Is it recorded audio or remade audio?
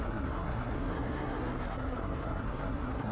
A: remade